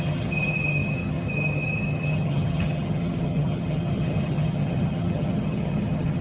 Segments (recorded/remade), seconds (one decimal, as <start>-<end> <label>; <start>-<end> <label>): 0.0-6.2 remade